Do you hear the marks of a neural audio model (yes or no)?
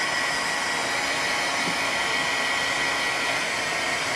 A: no